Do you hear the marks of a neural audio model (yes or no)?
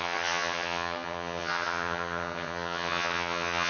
yes